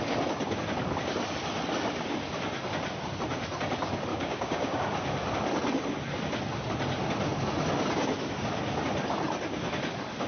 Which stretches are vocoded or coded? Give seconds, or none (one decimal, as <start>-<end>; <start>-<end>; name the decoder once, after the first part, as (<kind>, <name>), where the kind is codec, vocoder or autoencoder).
4.1-4.8 (codec, DAC)